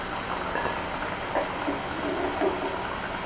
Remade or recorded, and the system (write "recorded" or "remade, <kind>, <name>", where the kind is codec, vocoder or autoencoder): recorded